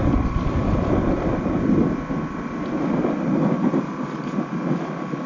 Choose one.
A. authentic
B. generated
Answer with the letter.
A